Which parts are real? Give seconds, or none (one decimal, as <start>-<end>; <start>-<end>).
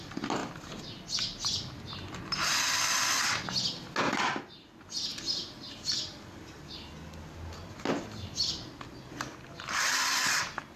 0.0-10.8